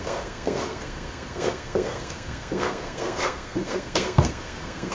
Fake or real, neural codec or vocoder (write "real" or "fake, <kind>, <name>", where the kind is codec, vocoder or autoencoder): fake, codec, SNAC